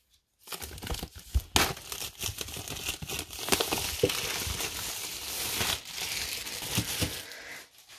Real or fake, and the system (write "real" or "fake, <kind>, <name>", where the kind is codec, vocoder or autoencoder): real